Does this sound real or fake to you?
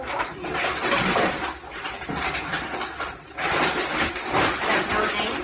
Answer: real